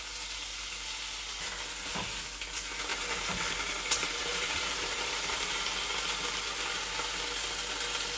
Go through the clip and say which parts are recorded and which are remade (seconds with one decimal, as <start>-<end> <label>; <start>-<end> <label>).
0.0-2.9 recorded; 2.9-5.6 remade; 5.6-8.2 recorded